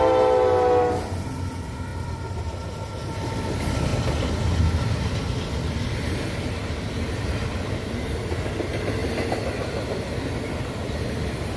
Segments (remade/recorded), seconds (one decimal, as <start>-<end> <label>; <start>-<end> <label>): 0.0-11.6 recorded